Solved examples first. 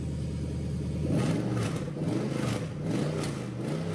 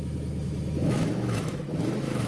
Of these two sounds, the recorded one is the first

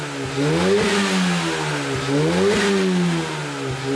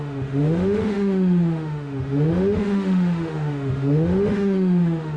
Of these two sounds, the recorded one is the first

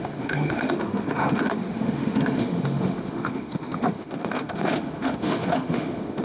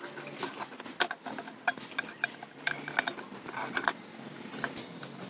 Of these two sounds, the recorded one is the second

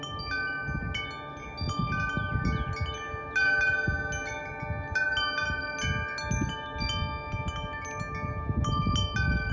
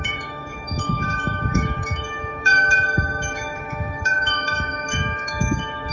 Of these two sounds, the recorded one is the first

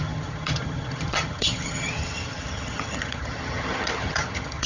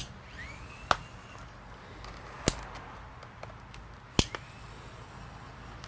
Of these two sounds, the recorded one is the second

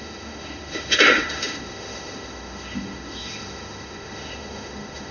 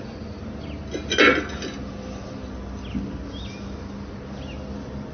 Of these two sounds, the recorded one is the second